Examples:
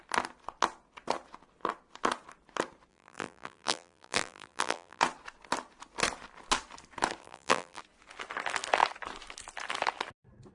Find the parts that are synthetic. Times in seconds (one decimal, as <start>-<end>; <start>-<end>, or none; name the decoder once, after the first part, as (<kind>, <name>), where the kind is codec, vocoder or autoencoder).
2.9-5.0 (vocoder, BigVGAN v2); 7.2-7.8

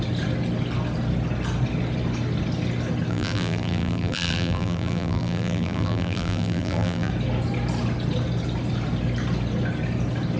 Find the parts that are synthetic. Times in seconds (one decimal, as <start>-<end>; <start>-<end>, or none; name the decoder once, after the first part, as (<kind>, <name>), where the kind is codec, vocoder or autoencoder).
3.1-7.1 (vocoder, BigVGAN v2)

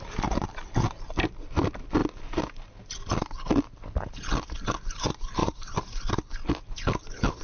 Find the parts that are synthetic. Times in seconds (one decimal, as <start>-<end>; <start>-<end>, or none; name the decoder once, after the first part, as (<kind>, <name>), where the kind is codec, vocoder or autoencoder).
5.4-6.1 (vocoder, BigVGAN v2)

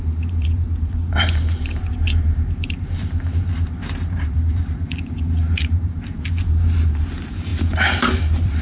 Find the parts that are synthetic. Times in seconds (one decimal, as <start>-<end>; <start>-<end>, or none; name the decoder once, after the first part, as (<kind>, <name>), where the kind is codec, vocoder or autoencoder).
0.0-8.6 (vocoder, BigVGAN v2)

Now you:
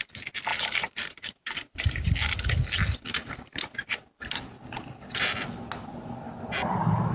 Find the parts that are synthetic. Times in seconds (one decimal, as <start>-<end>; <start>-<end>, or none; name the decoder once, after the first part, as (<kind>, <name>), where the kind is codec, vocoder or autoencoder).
0.5-2.1 (vocoder, BigVGAN v2); 3.1-3.6

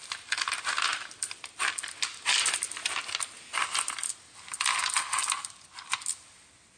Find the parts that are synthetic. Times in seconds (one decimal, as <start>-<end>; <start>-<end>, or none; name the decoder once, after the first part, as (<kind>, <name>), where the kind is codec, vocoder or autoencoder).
0.9-1.9 (vocoder, BigVGAN v2); 5.2-6.0

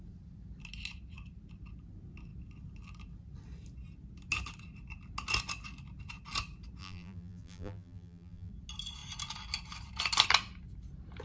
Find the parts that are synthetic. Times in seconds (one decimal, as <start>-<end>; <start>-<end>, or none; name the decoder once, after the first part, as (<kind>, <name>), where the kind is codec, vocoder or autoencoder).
6.8-8.5 (vocoder, BigVGAN v2)